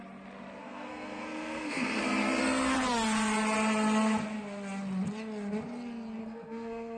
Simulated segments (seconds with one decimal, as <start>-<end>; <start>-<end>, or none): 0.6-2.0; 6.2-7.0